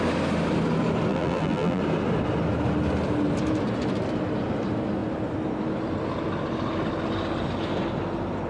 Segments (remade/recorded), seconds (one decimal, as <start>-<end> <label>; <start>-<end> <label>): 0.0-1.1 recorded; 1.1-1.8 remade; 1.8-8.5 recorded